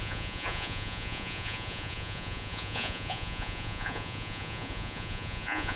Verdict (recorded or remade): remade